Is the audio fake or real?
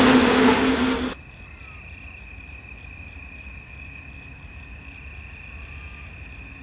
real